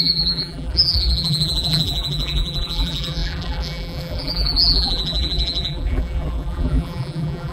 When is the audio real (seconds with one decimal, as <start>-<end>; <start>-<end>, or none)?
none